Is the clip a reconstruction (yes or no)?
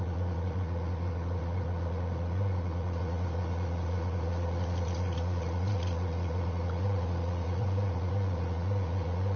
yes